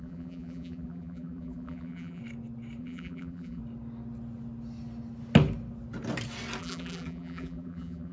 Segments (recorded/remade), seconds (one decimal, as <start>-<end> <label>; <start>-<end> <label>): 0.0-2.2 remade; 2.2-2.8 recorded; 2.8-3.6 remade; 3.6-6.6 recorded; 6.6-8.1 remade

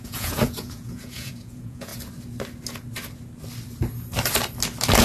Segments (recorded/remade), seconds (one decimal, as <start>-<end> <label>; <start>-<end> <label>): 0.0-1.9 remade; 1.9-5.0 recorded

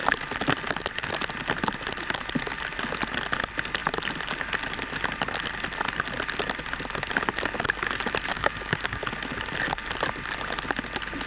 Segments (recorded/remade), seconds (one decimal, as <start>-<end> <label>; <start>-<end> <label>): 0.0-8.3 recorded; 8.3-9.0 remade; 9.0-11.3 recorded

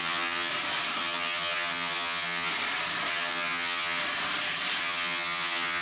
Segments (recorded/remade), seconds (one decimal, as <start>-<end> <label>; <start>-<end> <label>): 0.0-0.5 remade; 0.5-1.0 recorded; 1.0-2.5 remade; 2.5-3.1 recorded; 3.1-4.0 remade; 4.0-4.8 recorded; 4.8-5.8 remade

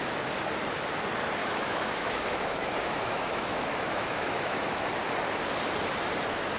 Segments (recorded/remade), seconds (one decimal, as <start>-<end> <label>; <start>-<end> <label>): 0.0-1.4 recorded; 1.4-4.9 remade; 4.9-6.6 recorded

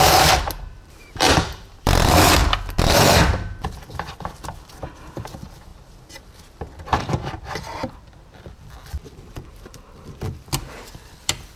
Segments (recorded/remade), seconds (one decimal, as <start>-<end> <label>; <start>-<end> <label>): 0.0-2.4 remade; 2.4-5.2 recorded; 5.2-5.7 remade; 5.7-7.0 recorded; 7.0-11.6 remade